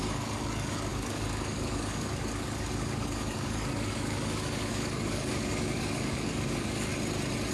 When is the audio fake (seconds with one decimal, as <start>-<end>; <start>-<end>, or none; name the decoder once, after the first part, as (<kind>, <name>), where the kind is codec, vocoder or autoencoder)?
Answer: 0.0-6.9 (codec, DAC)